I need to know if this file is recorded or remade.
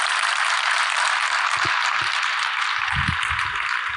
recorded